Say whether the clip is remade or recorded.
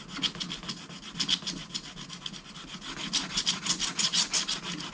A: recorded